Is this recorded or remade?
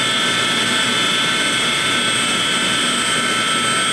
recorded